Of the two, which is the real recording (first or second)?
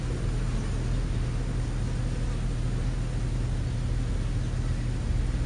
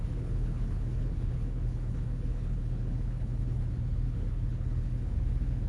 first